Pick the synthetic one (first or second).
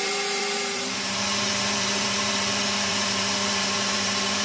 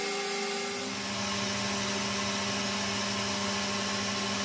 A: first